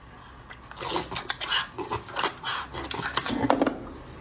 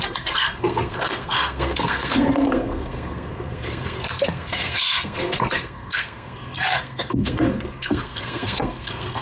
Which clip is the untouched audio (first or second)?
first